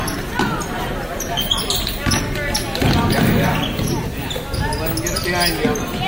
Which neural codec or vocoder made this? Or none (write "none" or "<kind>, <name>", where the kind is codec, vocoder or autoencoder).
none